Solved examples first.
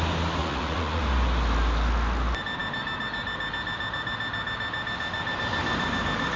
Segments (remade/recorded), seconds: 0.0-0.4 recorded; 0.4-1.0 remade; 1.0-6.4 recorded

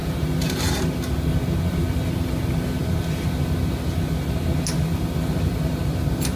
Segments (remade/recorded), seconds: 0.0-0.8 remade; 0.8-6.4 recorded

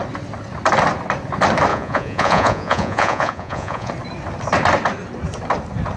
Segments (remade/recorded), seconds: 0.0-1.7 recorded; 1.7-3.9 remade; 3.9-6.0 recorded

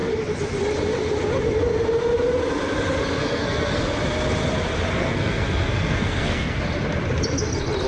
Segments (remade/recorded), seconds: 0.0-3.2 recorded; 3.2-3.8 remade; 3.8-5.0 recorded; 5.0-6.6 remade; 6.6-7.9 recorded